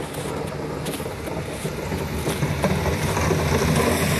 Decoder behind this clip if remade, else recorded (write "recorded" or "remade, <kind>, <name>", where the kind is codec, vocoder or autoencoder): recorded